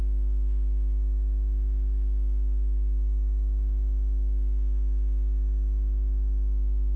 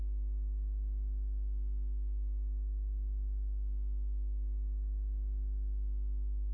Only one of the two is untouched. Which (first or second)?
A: first